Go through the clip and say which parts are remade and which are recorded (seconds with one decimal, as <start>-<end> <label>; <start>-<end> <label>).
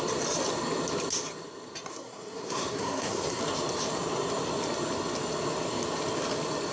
0.0-1.9 recorded; 1.9-3.4 remade; 3.4-6.7 recorded